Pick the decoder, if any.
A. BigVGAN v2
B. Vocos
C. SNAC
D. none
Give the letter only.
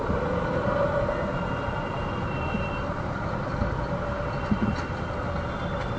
D